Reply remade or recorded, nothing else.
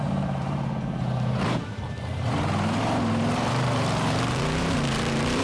remade